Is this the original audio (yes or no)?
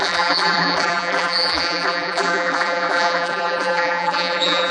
no